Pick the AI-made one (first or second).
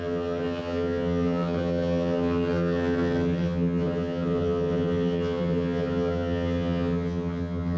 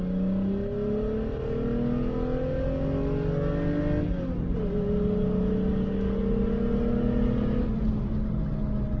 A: first